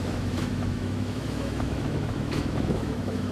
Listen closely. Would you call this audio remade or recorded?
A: remade